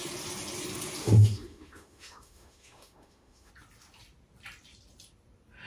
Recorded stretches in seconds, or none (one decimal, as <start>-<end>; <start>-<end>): 0.0-1.0; 3.5-5.7